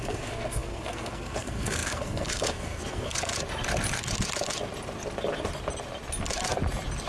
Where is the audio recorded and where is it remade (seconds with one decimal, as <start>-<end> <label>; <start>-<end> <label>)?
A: 0.0-3.3 remade; 3.3-7.1 recorded